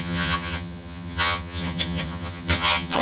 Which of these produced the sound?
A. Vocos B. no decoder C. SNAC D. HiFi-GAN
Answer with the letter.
D